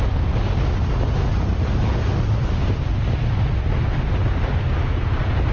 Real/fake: real